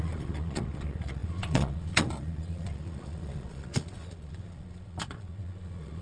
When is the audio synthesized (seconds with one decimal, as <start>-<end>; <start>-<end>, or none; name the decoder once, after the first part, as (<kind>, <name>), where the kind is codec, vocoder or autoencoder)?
0.0-6.0 (vocoder, Vocos)